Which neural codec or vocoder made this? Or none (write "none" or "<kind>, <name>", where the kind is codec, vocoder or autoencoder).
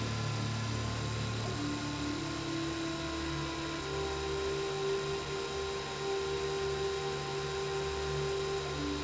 none